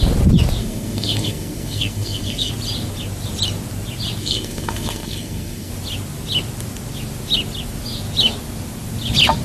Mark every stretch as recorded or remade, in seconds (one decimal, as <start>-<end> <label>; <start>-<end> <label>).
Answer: 0.0-0.6 recorded; 0.6-2.5 remade; 2.5-4.2 recorded; 4.2-5.7 remade; 5.7-9.4 recorded